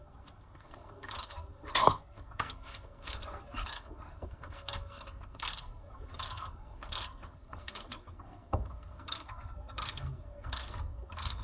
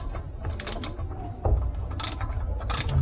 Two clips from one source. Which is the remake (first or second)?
first